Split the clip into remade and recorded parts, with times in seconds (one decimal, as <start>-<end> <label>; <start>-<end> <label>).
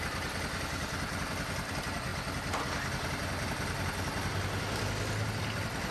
0.0-5.9 recorded